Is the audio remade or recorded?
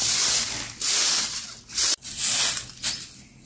recorded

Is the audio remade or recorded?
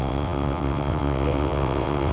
remade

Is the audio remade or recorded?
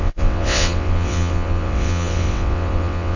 remade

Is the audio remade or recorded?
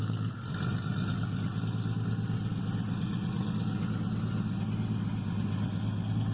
recorded